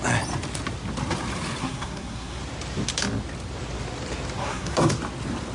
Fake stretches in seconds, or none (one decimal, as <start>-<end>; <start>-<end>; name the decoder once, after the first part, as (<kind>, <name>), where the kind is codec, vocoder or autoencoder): 1.6-2.4 (codec, SNAC); 4.4-4.9